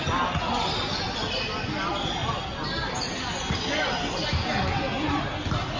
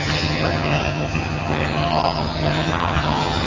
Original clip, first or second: first